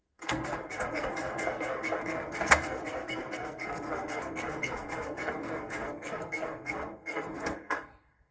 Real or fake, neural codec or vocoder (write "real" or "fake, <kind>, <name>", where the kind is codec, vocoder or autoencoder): fake, codec, SNAC